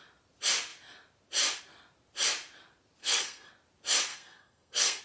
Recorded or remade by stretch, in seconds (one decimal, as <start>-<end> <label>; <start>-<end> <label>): 0.0-3.0 recorded; 3.0-3.5 remade; 3.5-4.1 recorded; 4.1-5.0 remade